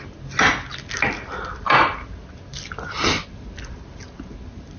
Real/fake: real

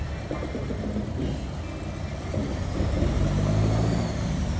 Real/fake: real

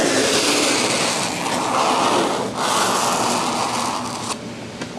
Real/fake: real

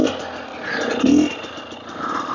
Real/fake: real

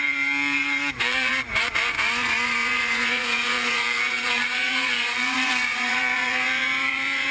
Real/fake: fake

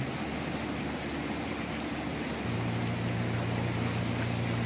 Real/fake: real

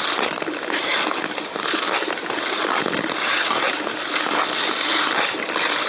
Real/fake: real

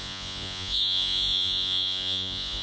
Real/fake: fake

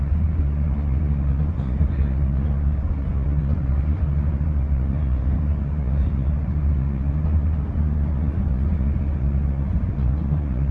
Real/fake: fake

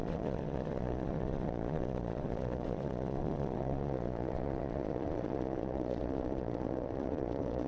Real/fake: fake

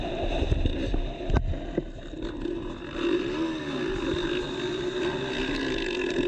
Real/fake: real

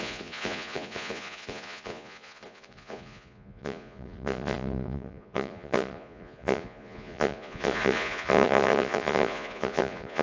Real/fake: fake